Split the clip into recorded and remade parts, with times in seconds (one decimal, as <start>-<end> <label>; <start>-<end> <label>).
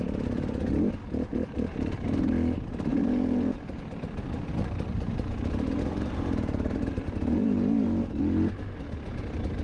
0.0-1.0 recorded; 1.0-2.3 remade; 2.3-2.9 recorded; 2.9-3.8 remade; 3.8-4.6 recorded; 4.6-8.2 remade; 8.2-9.6 recorded